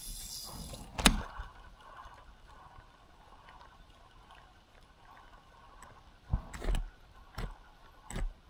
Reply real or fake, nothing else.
real